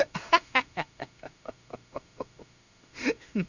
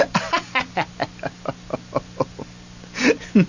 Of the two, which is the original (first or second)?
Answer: second